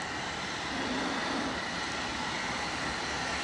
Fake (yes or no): no